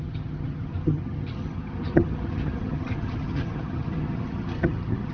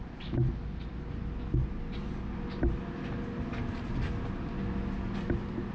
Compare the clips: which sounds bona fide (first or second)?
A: second